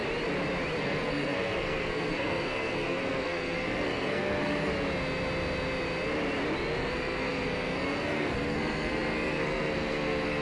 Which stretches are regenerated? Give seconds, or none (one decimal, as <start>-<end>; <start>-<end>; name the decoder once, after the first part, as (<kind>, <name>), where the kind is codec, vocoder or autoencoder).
0.8-4.7 (codec, SNAC); 6.8-10.4